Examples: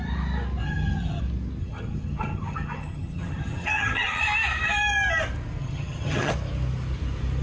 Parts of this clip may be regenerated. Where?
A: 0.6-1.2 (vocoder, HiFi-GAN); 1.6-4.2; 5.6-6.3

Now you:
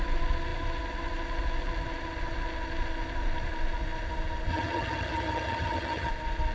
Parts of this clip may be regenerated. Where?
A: 4.5-6.1 (vocoder, HiFi-GAN)

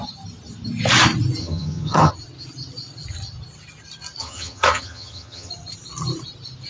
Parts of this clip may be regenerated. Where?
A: 1.4-2.1 (vocoder, HiFi-GAN); 4.2-5.5